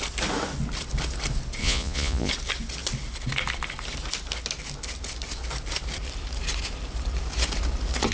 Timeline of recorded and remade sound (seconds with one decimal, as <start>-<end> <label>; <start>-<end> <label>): 0.0-1.6 recorded; 1.6-2.3 remade; 2.3-8.1 recorded